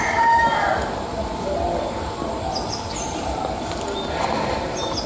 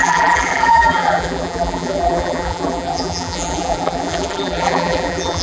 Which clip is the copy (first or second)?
second